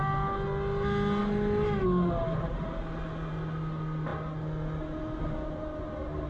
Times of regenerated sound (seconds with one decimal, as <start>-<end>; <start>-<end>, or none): none